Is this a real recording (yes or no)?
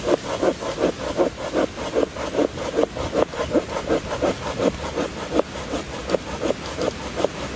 yes